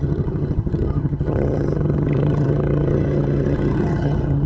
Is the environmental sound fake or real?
fake